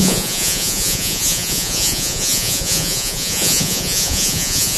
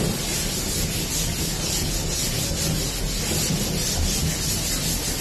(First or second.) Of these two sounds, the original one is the second